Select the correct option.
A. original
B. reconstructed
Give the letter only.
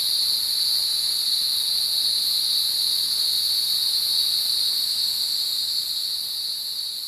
A